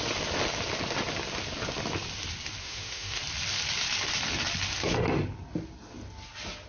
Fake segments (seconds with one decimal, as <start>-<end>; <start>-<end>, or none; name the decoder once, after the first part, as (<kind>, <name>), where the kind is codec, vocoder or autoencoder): 2.6-3.2 (autoencoder, DAC-VAE)